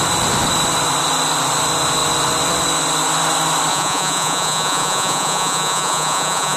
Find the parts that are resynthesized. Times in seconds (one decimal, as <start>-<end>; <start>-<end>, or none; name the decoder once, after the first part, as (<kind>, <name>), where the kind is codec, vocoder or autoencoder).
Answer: 3.7-6.6 (vocoder, Vocos)